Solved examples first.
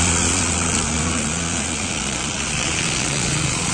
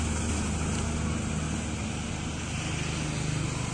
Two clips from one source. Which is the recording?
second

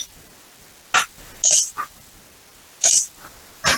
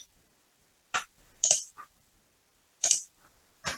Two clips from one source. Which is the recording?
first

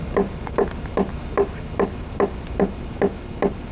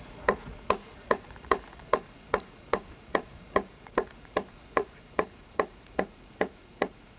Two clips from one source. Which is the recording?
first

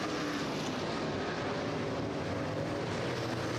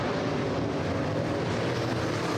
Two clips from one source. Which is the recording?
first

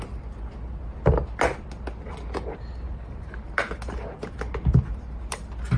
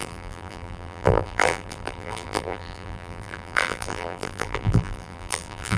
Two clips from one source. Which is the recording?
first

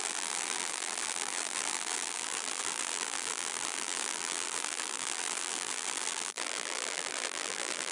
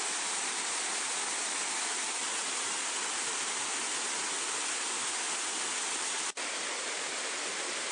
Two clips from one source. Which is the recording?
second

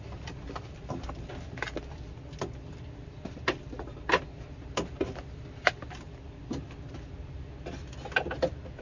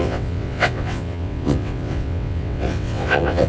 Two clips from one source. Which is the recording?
first